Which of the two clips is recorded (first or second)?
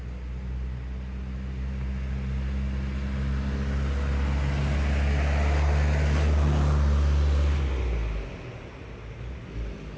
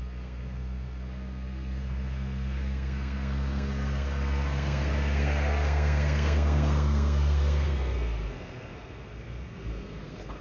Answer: first